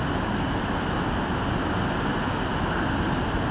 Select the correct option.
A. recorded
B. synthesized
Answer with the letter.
A